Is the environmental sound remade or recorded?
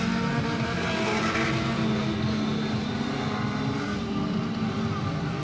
recorded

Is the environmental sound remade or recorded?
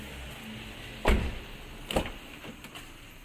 recorded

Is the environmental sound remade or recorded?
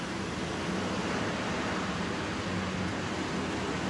recorded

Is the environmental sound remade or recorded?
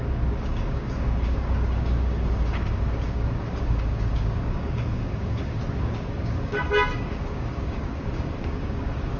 remade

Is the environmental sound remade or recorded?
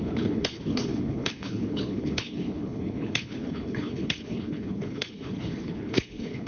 remade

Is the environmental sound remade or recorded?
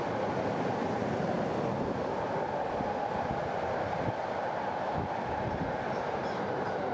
recorded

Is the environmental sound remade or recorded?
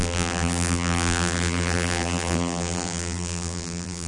remade